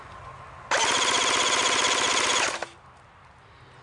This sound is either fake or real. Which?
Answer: real